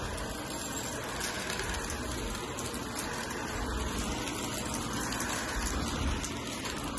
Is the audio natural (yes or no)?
yes